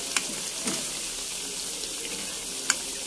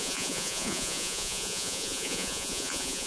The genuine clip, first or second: first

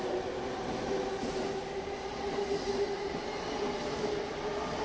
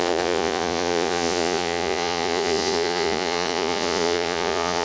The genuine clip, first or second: first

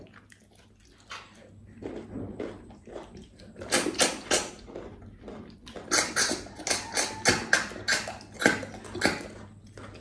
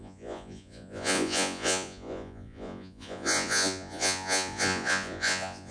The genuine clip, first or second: first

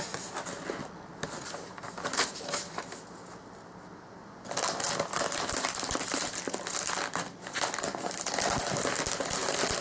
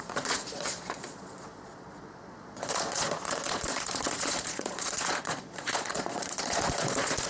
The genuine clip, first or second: first